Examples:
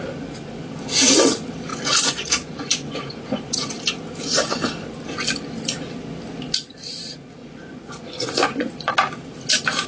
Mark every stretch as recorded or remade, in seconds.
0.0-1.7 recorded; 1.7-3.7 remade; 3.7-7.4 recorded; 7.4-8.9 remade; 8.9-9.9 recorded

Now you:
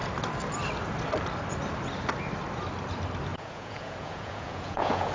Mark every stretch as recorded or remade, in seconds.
0.0-3.3 recorded; 3.3-5.1 remade